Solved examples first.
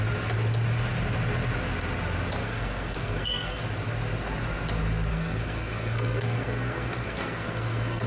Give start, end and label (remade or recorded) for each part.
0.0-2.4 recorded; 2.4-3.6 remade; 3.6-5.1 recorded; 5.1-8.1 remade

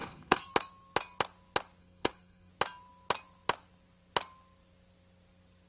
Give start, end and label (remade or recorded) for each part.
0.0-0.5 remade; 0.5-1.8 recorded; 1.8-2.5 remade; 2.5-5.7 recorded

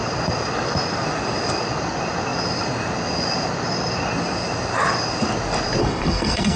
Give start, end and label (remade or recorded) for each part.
0.0-5.8 recorded; 5.8-6.6 remade

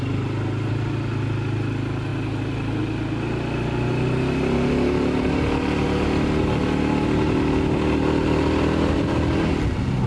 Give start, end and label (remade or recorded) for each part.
0.0-10.1 recorded